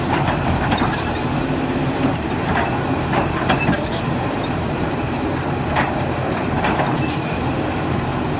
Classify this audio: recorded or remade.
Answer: remade